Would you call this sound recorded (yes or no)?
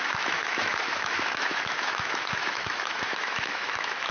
no